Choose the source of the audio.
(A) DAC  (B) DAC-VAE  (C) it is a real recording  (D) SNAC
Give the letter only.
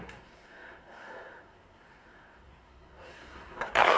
D